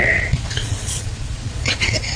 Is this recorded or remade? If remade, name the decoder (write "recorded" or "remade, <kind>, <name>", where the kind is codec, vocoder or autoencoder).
remade, vocoder, Vocos